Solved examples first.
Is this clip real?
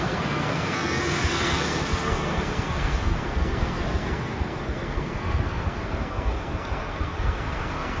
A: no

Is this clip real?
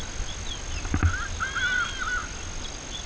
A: yes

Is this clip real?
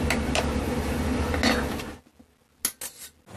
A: yes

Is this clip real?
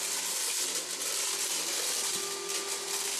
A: yes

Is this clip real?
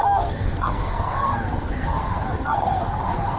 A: no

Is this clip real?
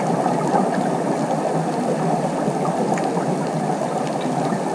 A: yes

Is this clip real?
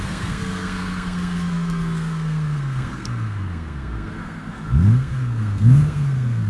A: no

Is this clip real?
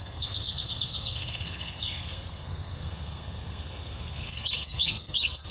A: no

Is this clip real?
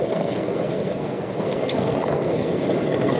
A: no